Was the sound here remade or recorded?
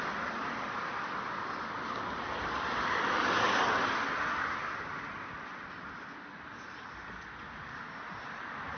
recorded